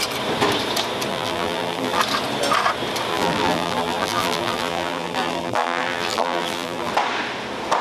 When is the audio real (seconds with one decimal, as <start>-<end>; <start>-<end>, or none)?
0.0-1.1; 2.0-3.1; 6.9-7.8

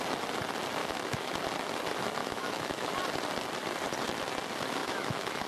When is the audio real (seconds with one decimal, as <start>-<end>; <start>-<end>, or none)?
0.0-0.8; 1.3-2.2; 2.9-4.8

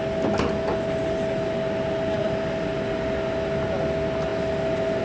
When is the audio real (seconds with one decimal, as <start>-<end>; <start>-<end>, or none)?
0.0-5.0

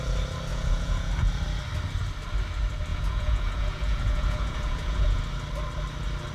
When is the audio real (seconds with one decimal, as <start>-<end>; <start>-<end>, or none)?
0.0-0.5; 1.1-2.9; 5.2-6.3

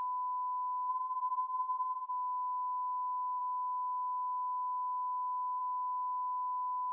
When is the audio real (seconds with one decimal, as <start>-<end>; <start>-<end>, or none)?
0.0-0.9; 2.1-6.9

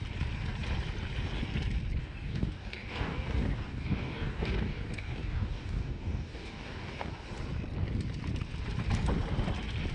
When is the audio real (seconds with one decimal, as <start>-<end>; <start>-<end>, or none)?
0.0-2.0; 7.1-9.9